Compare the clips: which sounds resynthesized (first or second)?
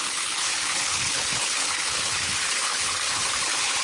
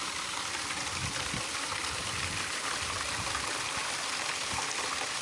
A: first